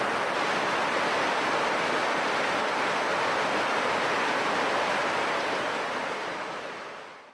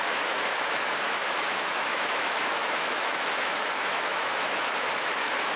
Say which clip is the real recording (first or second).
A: first